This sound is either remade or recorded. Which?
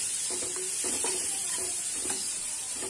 remade